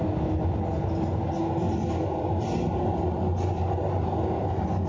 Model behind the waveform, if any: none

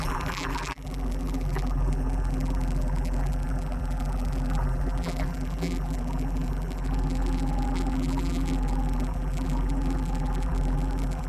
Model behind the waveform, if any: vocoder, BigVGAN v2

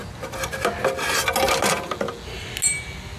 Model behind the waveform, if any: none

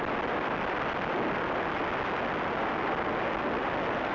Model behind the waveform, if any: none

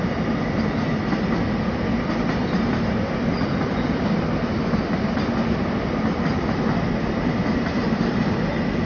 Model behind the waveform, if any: none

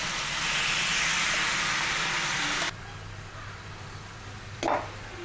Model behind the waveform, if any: none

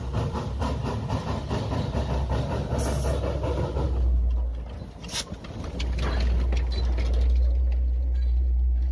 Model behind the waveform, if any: none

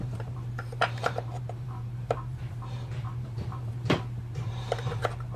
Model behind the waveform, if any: vocoder, BigVGAN v2